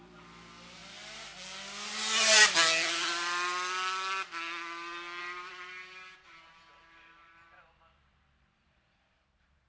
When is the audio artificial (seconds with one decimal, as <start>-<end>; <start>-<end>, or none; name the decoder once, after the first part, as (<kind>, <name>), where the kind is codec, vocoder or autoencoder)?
0.0-0.8 (vocoder, BigVGAN v2); 5.2-9.7